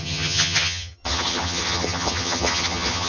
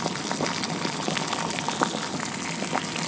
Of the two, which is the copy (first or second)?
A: first